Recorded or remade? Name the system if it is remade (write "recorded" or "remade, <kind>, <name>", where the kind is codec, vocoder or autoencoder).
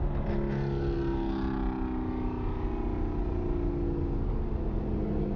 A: recorded